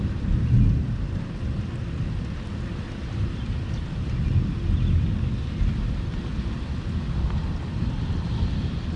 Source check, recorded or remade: recorded